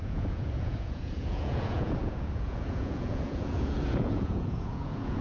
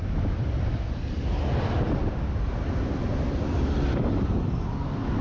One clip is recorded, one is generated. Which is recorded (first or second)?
second